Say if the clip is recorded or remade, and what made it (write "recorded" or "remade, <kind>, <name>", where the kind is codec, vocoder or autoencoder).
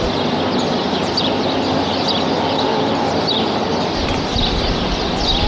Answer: recorded